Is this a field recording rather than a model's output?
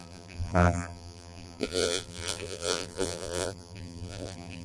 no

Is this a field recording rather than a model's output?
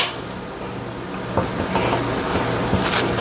yes